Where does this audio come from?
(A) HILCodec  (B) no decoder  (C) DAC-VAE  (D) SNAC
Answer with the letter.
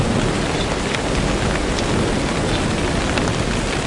B